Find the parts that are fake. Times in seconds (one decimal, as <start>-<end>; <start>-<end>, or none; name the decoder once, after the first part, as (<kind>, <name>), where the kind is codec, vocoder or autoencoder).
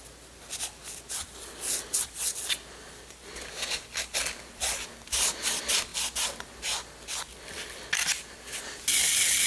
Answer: none